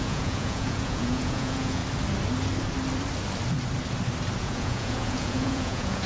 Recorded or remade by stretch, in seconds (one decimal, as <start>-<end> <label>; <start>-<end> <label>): 0.0-1.8 remade; 1.8-4.4 recorded; 4.4-6.1 remade